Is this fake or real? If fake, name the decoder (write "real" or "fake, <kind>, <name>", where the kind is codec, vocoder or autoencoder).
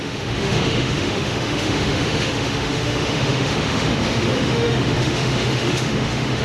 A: fake, autoencoder, DAC-VAE